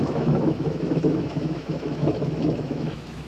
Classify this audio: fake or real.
fake